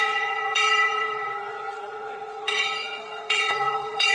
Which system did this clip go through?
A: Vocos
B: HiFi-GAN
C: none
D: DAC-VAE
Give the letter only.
A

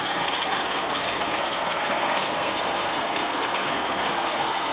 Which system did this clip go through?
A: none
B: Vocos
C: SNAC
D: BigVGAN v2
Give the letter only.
C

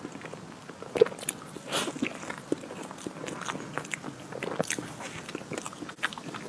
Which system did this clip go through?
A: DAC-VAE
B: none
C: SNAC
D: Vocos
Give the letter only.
B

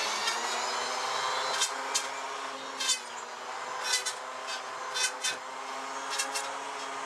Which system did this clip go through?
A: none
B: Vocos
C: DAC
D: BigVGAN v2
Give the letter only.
A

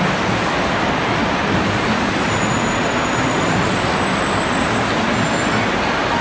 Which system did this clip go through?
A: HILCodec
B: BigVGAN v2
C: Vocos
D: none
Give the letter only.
D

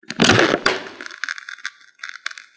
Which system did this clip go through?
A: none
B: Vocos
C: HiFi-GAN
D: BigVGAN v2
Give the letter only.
A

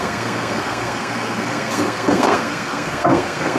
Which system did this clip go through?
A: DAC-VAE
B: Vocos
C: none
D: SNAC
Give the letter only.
D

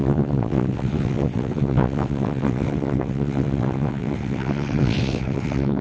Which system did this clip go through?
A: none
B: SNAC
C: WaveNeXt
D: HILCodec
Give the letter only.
C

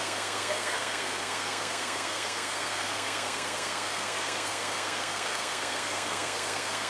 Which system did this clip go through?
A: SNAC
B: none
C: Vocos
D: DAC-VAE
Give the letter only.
A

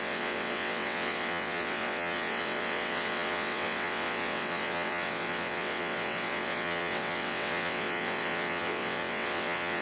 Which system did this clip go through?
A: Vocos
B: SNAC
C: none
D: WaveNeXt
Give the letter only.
D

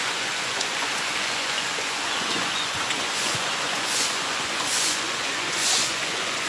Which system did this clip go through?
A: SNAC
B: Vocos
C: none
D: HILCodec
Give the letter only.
B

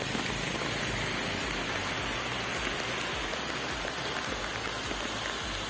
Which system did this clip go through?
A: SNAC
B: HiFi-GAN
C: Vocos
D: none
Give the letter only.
D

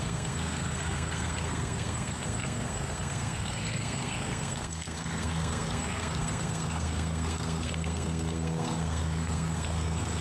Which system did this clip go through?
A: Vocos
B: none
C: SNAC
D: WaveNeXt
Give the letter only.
C